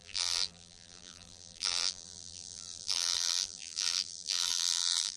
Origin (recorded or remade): remade